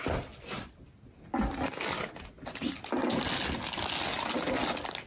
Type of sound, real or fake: real